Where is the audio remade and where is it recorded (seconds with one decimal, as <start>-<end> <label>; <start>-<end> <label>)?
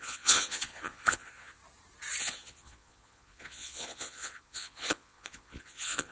0.0-1.6 remade; 1.6-2.2 recorded; 2.2-6.1 remade